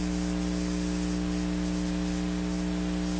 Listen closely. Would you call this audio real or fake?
real